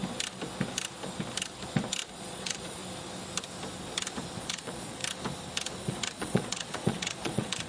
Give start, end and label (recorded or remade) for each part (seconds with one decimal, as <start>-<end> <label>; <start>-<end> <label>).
0.0-2.1 recorded; 2.1-2.8 remade; 2.8-4.4 recorded; 4.4-5.0 remade; 5.0-5.8 recorded; 5.8-7.7 remade